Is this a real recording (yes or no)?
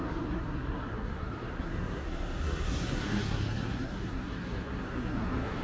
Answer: no